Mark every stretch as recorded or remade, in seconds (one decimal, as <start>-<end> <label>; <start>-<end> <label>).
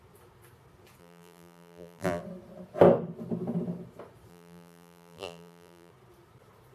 0.0-1.0 recorded; 1.0-2.2 remade; 2.2-4.3 recorded; 4.3-5.9 remade; 5.9-6.7 recorded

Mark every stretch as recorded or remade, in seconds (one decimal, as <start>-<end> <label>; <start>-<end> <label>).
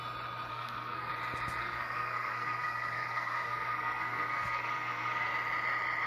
0.0-0.5 recorded; 0.5-1.1 remade; 1.1-1.6 recorded; 1.6-5.3 remade; 5.3-6.1 recorded